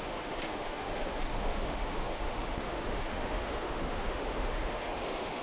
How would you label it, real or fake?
fake